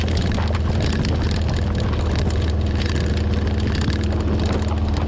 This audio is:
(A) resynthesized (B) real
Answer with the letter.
B